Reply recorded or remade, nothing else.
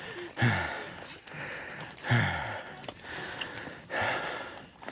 recorded